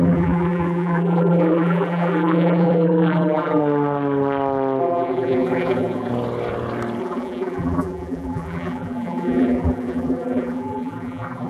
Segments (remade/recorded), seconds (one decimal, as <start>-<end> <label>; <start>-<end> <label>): 0.0-3.6 remade; 3.6-4.8 recorded; 4.8-6.1 remade; 6.1-7.0 recorded; 7.0-11.5 remade